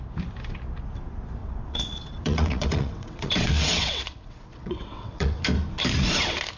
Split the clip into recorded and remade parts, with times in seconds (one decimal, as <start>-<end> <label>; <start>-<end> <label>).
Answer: 0.0-1.4 recorded; 1.4-5.4 remade; 5.4-6.6 recorded